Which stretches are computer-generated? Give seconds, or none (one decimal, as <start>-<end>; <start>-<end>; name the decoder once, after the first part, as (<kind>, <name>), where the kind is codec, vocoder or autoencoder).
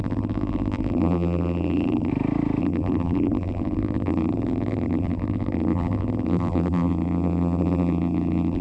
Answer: 0.0-2.1 (vocoder, BigVGAN v2); 2.6-8.6